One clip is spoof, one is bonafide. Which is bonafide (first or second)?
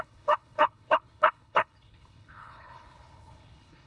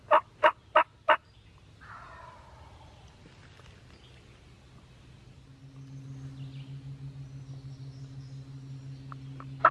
second